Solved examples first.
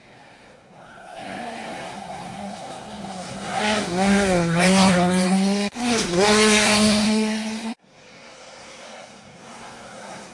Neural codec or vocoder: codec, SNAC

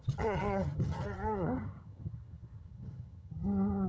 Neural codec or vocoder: vocoder, HiFi-GAN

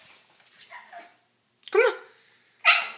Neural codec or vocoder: none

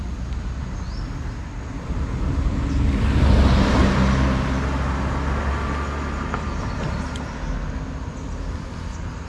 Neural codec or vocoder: none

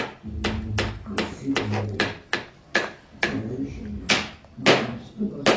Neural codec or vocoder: none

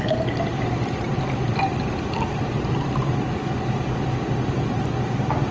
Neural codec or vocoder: none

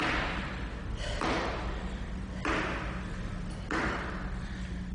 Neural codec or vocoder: none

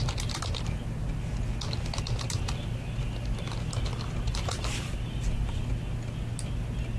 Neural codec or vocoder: none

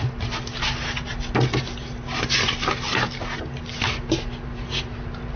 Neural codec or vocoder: none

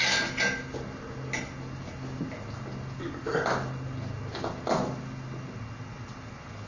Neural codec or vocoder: none